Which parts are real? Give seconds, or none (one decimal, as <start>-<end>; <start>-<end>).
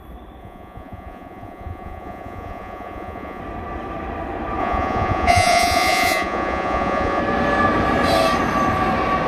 0.0-0.4; 3.4-4.6; 7.2-9.3